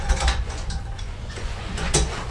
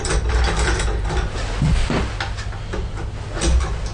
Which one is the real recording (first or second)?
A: second